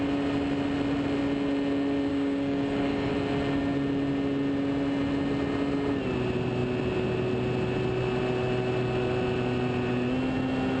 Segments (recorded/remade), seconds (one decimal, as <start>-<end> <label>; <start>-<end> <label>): 0.0-2.1 recorded; 2.1-3.1 remade; 3.1-10.8 recorded